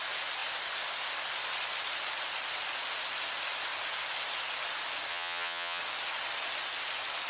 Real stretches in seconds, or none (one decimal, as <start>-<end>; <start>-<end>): 0.0-5.1; 5.8-7.3